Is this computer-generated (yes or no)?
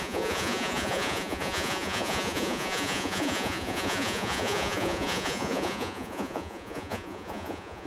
yes